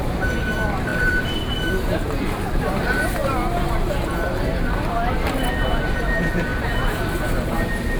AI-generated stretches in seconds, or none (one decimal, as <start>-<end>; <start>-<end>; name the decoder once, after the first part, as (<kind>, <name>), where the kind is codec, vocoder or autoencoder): 0.9-2.6 (vocoder, BigVGAN v2)